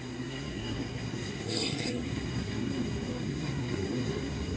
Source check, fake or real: fake